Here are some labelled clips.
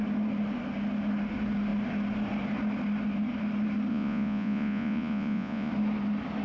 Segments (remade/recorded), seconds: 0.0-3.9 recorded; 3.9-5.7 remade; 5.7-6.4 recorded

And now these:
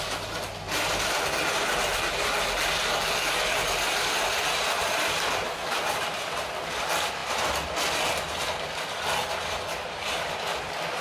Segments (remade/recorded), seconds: 0.0-11.0 recorded

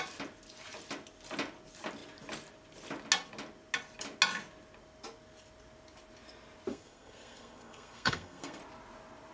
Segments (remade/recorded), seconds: 0.0-6.7 recorded; 6.7-8.6 remade; 8.6-9.3 recorded

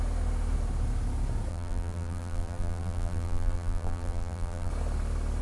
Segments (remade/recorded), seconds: 0.0-1.5 recorded; 1.5-4.7 remade; 4.7-5.4 recorded

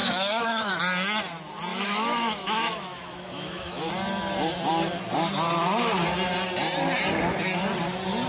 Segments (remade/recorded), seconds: 0.0-0.7 remade; 0.7-1.7 recorded; 1.7-3.9 remade; 3.9-8.3 recorded